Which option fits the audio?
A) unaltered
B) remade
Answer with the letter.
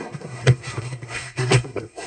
B